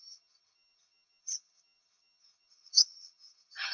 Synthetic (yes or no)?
yes